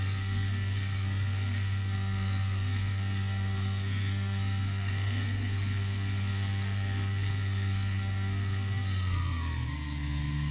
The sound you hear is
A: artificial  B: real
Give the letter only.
A